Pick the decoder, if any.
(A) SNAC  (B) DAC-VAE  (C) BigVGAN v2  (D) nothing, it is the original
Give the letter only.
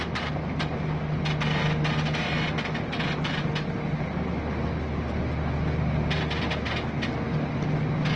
D